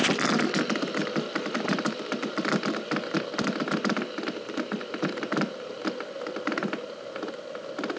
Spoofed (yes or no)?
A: no